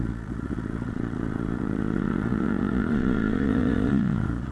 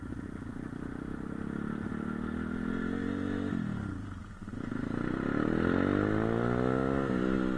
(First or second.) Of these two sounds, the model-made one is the first